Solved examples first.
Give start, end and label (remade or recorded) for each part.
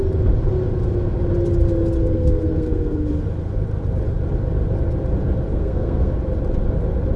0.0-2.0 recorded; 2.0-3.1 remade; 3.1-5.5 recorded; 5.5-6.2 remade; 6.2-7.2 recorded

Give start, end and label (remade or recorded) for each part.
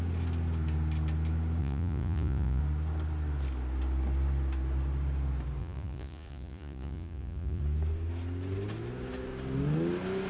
0.0-1.6 recorded; 1.6-2.6 remade; 2.6-5.6 recorded; 5.6-7.6 remade; 7.6-10.3 recorded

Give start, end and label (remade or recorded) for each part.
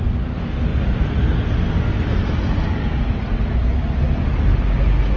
0.0-5.2 recorded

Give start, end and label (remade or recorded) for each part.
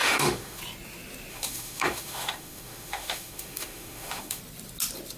0.0-0.6 remade; 0.6-1.3 recorded; 1.3-4.4 remade; 4.4-5.2 recorded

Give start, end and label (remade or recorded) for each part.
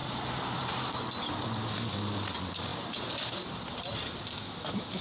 0.0-1.0 remade; 1.0-2.7 recorded; 2.7-4.2 remade; 4.2-5.0 recorded